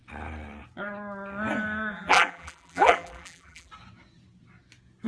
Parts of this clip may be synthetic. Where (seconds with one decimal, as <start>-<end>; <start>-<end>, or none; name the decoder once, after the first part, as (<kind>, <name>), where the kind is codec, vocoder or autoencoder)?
1.9-3.7 (vocoder, BigVGAN v2)